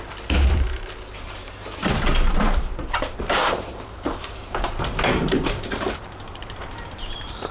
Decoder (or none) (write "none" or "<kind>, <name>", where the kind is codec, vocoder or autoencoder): vocoder, BigVGAN v2